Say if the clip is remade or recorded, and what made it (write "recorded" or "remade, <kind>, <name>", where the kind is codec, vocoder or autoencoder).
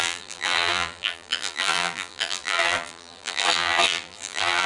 remade, vocoder, BigVGAN v2